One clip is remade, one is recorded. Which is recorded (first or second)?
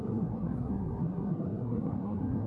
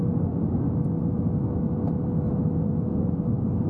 second